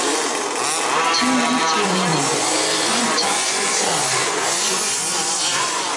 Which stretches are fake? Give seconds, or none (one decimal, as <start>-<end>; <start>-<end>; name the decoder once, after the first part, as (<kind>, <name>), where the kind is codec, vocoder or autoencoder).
2.1-6.0 (vocoder, Vocos)